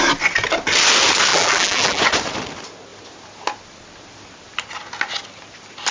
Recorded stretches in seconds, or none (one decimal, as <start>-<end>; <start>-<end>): 0.0-1.3; 2.0-5.9